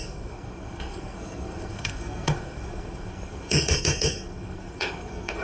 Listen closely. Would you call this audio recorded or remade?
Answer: remade